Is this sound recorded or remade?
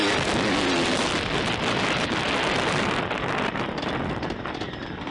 recorded